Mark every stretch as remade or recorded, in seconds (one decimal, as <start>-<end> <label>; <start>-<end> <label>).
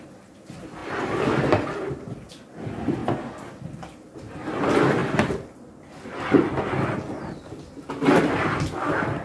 0.0-9.2 recorded